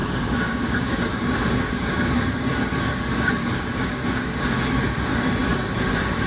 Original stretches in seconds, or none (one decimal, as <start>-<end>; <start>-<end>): none

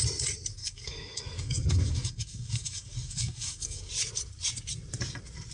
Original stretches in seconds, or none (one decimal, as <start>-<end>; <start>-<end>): 0.0-0.6; 3.9-5.5